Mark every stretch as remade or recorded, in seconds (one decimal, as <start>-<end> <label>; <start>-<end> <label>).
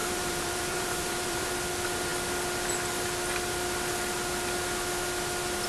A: 0.0-1.5 remade; 1.5-5.7 recorded